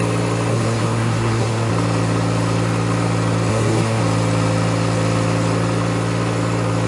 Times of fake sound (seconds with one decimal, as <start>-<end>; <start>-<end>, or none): 0.5-1.7; 3.5-4.0